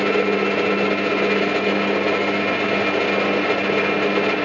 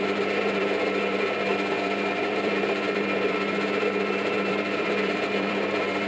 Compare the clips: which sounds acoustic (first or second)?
first